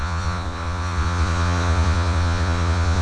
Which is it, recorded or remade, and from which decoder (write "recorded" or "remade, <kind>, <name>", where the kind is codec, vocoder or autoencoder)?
remade, vocoder, Vocos